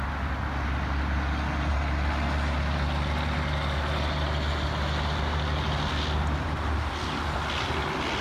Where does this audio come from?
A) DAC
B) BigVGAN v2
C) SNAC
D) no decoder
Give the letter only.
D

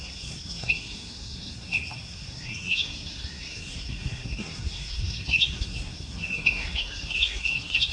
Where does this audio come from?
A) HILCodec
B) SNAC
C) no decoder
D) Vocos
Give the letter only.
B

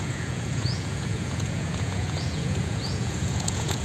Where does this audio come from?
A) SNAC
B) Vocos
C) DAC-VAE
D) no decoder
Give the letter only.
B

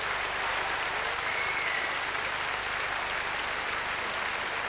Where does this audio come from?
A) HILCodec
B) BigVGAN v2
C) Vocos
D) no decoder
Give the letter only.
D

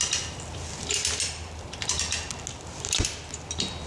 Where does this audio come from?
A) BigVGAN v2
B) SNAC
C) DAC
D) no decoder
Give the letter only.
D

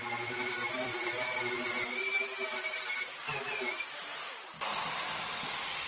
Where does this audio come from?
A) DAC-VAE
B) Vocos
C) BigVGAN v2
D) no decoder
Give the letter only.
C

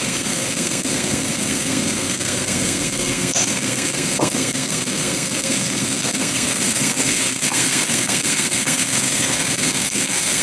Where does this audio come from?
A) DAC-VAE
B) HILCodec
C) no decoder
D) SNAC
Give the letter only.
D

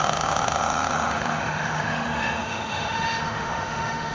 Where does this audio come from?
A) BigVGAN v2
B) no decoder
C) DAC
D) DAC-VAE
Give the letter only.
D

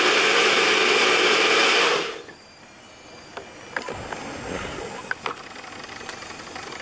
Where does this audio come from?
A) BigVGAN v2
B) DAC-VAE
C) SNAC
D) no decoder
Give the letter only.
A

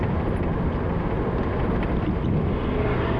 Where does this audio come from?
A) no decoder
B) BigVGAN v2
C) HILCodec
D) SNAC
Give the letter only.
A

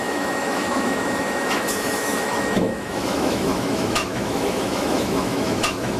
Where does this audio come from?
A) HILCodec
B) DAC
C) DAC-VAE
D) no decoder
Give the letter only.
C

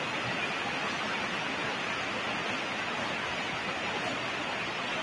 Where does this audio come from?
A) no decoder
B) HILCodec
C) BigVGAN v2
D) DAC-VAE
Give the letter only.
A